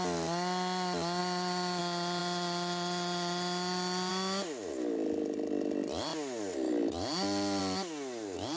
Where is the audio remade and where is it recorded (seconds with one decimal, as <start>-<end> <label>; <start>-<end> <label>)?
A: 0.0-8.6 recorded